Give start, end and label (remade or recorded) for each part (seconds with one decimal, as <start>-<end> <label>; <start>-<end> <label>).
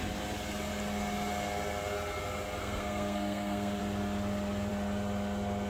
0.0-2.6 recorded; 2.6-3.8 remade; 3.8-5.7 recorded